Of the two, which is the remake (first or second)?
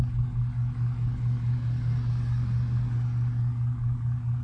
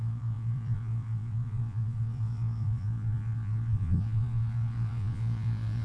second